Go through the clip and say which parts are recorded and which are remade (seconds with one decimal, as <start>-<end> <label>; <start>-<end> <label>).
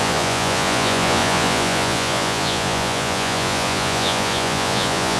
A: 0.0-5.2 remade